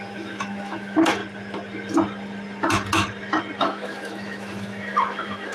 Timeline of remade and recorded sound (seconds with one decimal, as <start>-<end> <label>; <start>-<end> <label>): 0.0-1.2 remade; 1.2-3.6 recorded; 3.6-5.5 remade